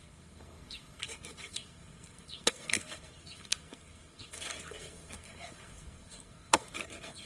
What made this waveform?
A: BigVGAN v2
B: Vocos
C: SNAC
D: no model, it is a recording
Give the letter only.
C